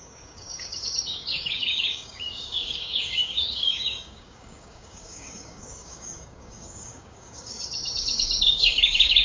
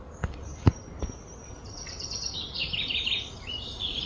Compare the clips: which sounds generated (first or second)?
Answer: first